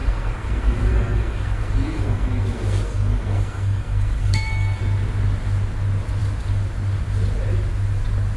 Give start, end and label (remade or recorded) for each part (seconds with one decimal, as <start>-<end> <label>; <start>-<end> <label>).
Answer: 0.0-4.8 remade; 4.8-8.4 recorded